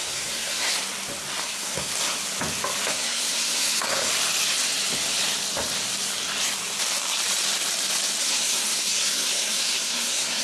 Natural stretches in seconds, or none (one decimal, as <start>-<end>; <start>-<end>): 0.7-1.4; 1.9-2.9; 4.0-8.2